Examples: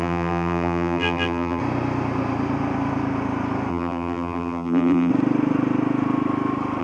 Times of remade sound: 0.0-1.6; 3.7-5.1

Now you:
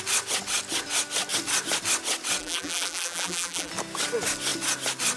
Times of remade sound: 2.4-3.7

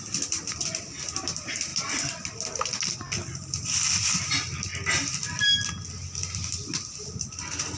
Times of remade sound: 0.0-1.7; 4.3-4.7; 6.5-7.8

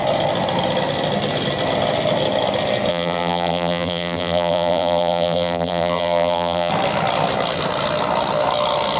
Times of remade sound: 2.9-6.7

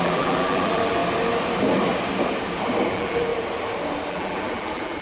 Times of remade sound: 0.0-1.0; 2.9-3.3; 4.1-5.0

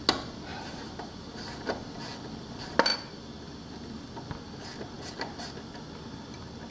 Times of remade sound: 0.5-2.0

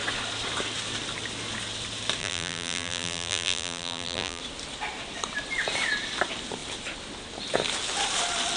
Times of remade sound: 2.2-4.4